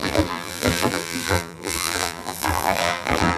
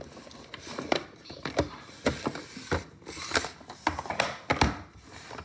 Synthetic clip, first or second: first